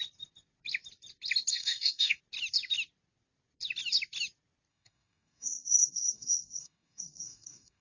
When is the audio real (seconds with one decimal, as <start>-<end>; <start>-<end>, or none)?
0.0-1.5; 2.2-4.7